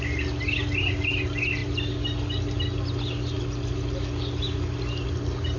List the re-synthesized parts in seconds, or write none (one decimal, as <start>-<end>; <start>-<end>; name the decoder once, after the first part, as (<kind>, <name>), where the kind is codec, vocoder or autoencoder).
none